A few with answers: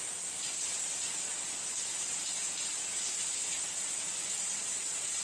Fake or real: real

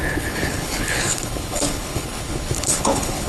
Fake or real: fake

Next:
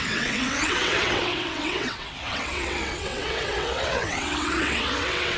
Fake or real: fake